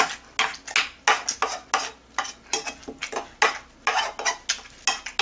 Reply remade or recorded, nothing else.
recorded